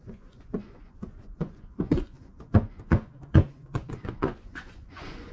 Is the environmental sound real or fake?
fake